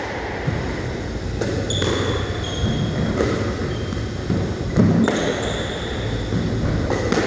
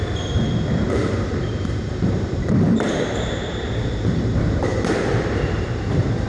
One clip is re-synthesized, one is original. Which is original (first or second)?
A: first